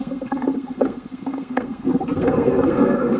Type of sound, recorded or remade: remade